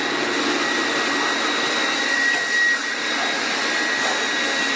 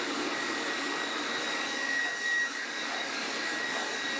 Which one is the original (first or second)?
first